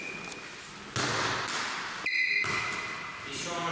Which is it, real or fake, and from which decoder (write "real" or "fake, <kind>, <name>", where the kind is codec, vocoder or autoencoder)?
real